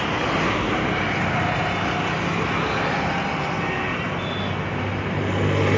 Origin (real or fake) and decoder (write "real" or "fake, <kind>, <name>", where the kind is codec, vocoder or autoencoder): real